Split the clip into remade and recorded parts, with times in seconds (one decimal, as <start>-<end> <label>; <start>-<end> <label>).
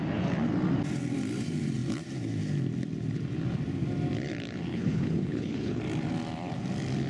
0.0-4.7 recorded; 4.7-5.8 remade; 5.8-7.1 recorded